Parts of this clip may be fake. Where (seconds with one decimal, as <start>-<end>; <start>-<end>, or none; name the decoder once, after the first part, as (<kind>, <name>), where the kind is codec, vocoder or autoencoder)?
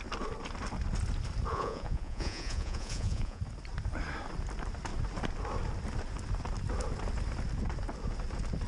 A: 1.5-3.4 (vocoder, Vocos)